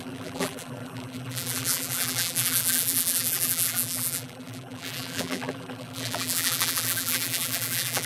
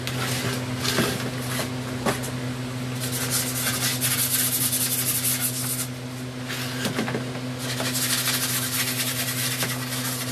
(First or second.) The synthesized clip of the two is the first